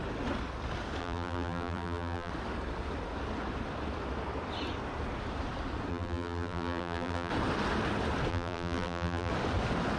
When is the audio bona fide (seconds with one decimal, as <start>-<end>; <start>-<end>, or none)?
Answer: 0.0-1.0; 2.3-5.9; 7.3-8.3; 9.3-10.0